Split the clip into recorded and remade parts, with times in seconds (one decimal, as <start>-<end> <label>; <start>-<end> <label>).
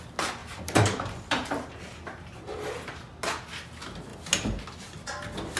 0.0-0.4 recorded; 0.4-3.0 remade; 3.0-5.6 recorded